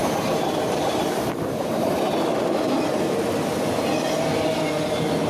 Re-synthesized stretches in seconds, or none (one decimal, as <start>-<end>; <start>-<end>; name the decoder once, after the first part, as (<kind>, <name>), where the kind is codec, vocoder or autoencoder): 0.0-2.1 (vocoder, BigVGAN v2)